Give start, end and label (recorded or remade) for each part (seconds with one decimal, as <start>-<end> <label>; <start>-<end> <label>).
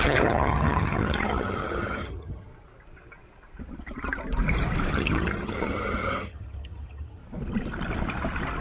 0.0-2.5 remade; 2.5-4.9 recorded; 4.9-7.2 remade; 7.2-8.6 recorded